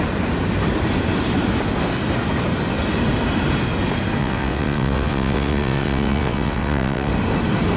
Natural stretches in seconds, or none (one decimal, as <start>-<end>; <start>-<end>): 0.0-4.2; 7.1-7.8